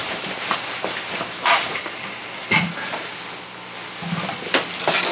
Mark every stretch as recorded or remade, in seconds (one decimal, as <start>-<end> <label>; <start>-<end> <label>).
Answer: 0.0-3.1 remade; 3.1-5.1 recorded